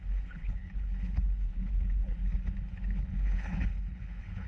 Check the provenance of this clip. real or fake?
fake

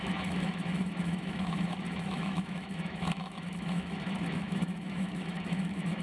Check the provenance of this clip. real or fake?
fake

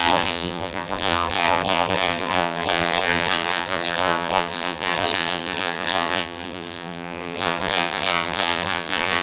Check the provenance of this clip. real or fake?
fake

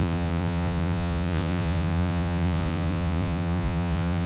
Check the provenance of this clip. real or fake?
fake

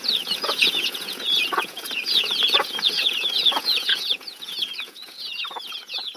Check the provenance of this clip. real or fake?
fake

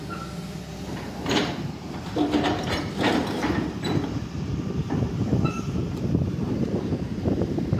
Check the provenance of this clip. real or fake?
fake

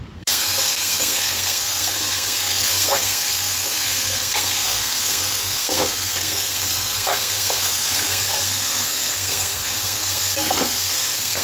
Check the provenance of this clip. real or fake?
fake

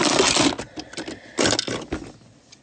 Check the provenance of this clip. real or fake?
real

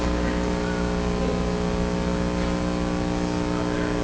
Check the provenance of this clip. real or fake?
real